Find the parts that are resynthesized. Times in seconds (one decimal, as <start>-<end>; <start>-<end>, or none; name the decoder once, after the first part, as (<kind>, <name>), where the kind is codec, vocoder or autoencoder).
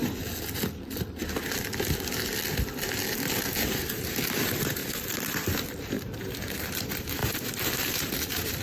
4.0-4.8 (vocoder, BigVGAN v2); 5.8-7.2; 7.9-8.6